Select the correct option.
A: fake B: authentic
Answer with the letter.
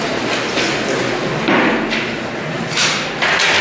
B